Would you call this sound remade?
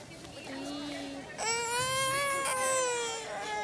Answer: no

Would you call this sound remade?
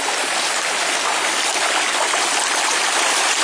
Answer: no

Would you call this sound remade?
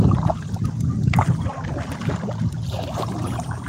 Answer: no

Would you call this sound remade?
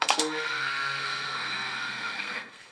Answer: yes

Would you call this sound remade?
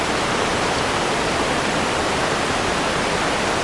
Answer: no